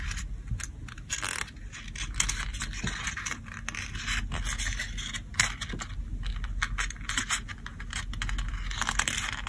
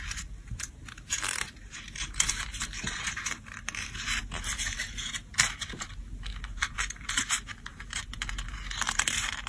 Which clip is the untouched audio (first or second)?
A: first